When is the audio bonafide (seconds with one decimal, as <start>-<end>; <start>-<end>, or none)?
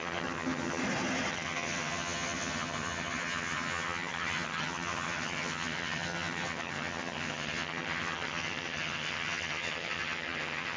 0.8-1.3